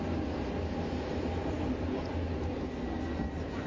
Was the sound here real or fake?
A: real